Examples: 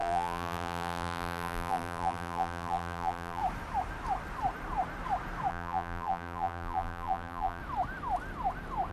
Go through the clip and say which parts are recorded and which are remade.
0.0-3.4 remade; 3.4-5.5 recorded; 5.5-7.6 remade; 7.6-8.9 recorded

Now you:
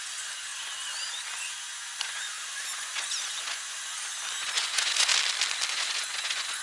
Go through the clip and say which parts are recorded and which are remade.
0.0-0.5 remade; 0.5-1.4 recorded; 1.4-3.9 remade; 3.9-4.4 recorded; 4.4-5.1 remade; 5.1-5.7 recorded; 5.7-6.6 remade

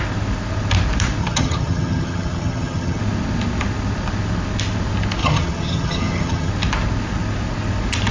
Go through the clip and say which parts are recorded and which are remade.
0.0-1.2 recorded; 1.2-3.0 remade; 3.0-5.2 recorded; 5.2-6.5 remade; 6.5-8.1 recorded

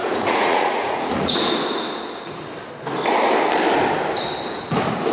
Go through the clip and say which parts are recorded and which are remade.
0.0-1.5 remade; 1.5-5.1 recorded

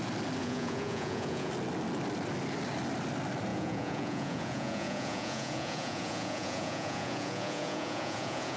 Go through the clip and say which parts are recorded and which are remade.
0.0-0.4 recorded; 0.4-1.5 remade; 1.5-3.5 recorded; 3.5-8.6 remade

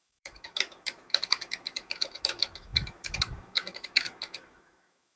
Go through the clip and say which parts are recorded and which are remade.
0.0-5.2 remade

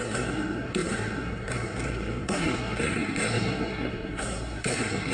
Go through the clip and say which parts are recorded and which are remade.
0.0-5.1 remade

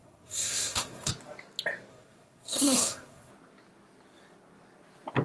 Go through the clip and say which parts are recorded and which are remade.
0.0-1.1 remade; 1.1-1.9 recorded; 1.9-3.3 remade; 3.3-5.2 recorded